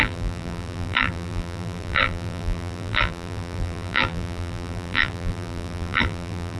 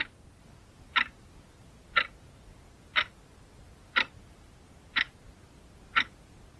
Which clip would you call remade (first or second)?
first